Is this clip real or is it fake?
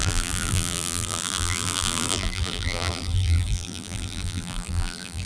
fake